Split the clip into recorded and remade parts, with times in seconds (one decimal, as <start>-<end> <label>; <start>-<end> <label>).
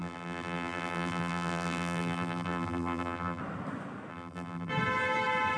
0.0-3.4 remade; 3.4-4.1 recorded; 4.1-4.7 remade; 4.7-5.6 recorded